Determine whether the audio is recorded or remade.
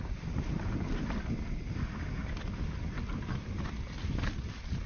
recorded